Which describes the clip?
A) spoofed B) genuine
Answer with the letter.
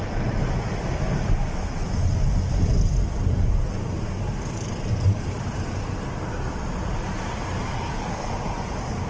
B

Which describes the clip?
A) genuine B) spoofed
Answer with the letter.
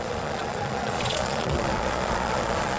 B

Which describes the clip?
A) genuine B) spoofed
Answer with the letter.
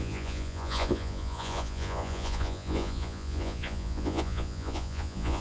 B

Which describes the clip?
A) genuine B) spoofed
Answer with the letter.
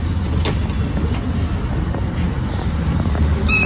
A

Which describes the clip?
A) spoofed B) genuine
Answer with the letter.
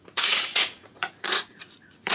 A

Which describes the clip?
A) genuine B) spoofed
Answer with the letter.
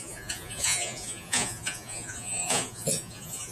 B